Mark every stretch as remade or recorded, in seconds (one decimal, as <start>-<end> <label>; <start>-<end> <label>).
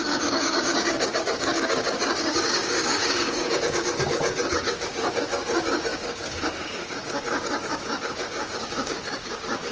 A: 0.0-9.7 remade